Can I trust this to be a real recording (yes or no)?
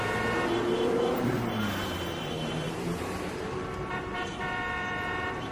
no